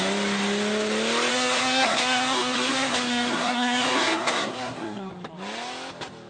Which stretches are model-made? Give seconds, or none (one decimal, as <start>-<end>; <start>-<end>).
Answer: 1.3-5.1